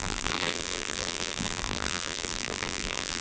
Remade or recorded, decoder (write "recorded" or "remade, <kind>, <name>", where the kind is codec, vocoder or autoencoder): remade, vocoder, BigVGAN v2